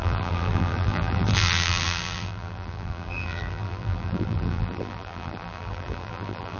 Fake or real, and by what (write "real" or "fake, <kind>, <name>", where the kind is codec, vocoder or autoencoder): fake, vocoder, BigVGAN v2